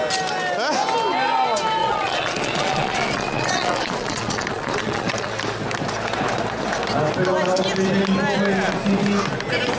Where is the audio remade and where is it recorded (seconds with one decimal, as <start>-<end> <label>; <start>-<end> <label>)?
0.0-1.8 recorded; 1.8-5.3 remade; 5.3-9.8 recorded